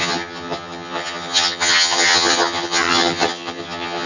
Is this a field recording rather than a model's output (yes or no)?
no